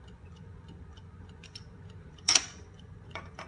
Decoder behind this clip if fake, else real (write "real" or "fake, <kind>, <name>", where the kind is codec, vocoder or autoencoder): fake, vocoder, Vocos